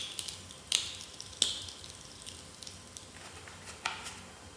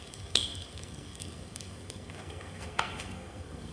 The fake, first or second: second